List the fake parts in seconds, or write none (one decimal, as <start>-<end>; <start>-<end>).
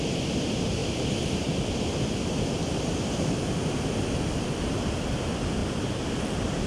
2.6-3.1; 5.6-6.7